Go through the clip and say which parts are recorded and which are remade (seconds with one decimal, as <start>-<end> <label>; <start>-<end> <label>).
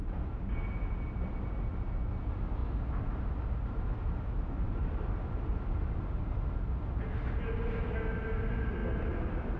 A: 0.0-9.6 recorded